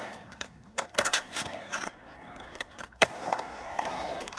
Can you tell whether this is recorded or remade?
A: remade